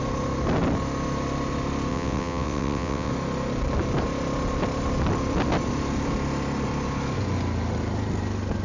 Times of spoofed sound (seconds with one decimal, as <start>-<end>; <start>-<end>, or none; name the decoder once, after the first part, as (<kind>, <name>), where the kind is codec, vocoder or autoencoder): 1.9-3.1 (vocoder, WaveNeXt)